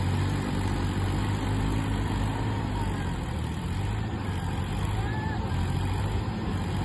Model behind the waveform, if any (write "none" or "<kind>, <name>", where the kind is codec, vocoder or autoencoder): none